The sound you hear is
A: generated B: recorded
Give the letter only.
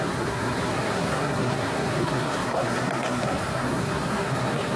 A